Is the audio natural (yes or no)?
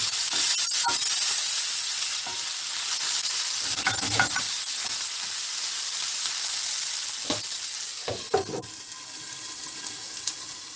yes